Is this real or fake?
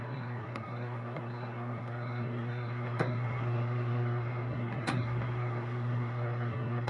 fake